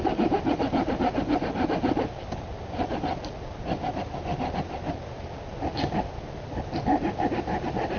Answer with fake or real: real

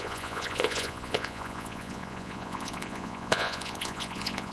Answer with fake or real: fake